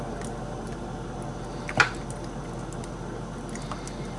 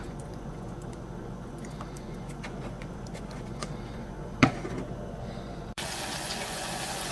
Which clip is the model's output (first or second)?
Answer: second